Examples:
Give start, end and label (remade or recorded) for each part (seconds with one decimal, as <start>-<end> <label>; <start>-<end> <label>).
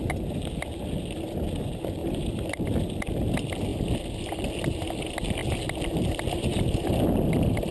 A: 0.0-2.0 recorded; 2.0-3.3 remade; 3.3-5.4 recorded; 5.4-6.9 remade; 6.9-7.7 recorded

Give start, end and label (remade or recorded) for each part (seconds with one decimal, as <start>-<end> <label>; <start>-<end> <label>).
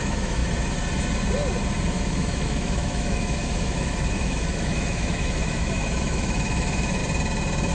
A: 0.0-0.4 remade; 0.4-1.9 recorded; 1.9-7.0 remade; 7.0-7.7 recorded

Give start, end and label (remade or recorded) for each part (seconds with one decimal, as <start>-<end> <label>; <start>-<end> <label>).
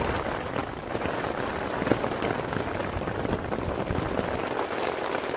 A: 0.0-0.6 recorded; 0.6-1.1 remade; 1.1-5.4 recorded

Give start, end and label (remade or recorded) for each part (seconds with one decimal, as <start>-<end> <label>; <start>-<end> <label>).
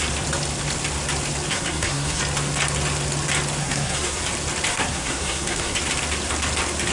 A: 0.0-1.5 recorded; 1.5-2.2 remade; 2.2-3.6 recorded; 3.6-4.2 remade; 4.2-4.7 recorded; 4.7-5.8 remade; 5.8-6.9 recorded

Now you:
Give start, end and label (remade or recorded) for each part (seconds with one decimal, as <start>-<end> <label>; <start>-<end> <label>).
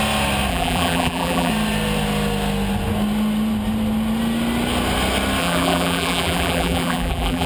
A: 0.0-0.5 recorded; 0.5-1.5 remade; 1.5-5.4 recorded; 5.4-7.5 remade